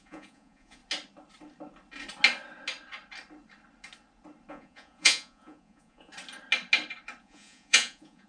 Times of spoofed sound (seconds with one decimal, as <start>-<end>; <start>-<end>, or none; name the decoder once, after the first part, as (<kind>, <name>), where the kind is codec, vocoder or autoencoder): 0.0-0.8 (vocoder, Vocos); 4.5-6.1; 7.2-8.3